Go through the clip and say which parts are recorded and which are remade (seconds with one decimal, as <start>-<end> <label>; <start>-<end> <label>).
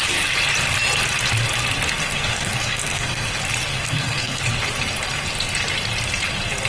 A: 0.0-2.0 recorded; 2.0-3.3 remade; 3.3-3.7 recorded; 3.7-4.4 remade; 4.4-6.7 recorded